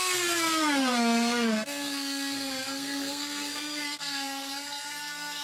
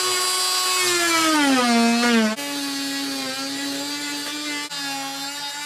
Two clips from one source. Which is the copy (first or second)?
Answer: first